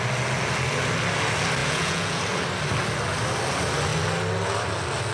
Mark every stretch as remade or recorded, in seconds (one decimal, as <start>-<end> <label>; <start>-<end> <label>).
0.0-1.6 recorded; 1.6-2.2 remade; 2.2-5.1 recorded